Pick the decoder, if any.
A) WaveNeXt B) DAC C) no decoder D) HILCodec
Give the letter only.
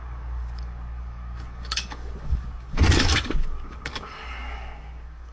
B